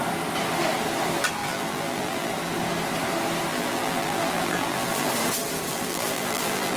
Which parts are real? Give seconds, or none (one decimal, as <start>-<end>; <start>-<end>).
0.0-1.4; 2.3-3.5; 5.1-5.7